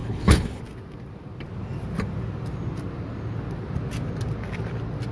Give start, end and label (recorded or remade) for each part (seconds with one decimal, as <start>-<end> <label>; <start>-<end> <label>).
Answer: 0.0-0.6 remade; 0.6-5.1 recorded